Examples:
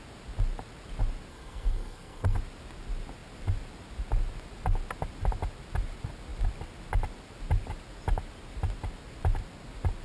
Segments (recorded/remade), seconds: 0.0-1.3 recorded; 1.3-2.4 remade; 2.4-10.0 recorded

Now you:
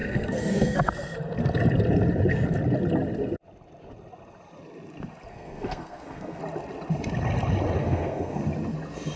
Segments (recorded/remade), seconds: 0.0-0.9 remade; 0.9-5.3 recorded; 5.3-6.4 remade; 6.4-7.8 recorded; 7.8-8.4 remade; 8.4-9.2 recorded